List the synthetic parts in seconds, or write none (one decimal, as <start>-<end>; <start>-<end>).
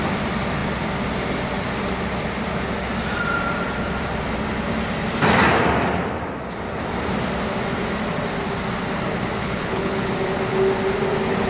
9.4-10.1